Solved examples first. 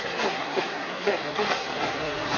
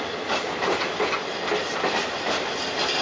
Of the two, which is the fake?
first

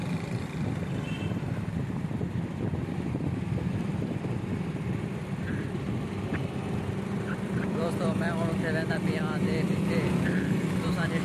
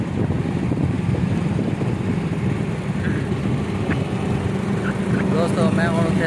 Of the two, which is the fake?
first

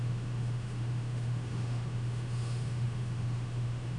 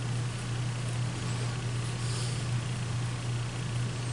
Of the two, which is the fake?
first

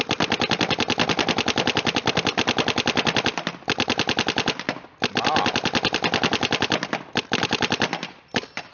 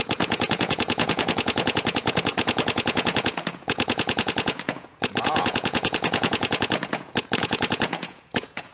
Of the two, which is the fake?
second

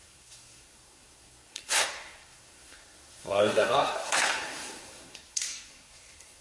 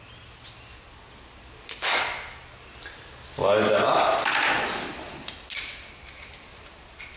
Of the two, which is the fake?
first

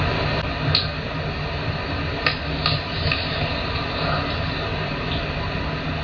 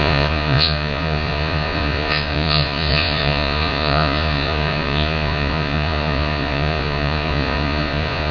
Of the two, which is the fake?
second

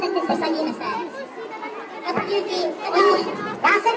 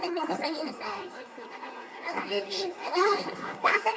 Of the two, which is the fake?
second